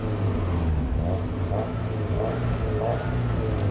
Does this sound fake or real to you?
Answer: real